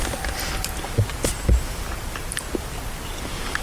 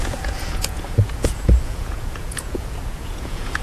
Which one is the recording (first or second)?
first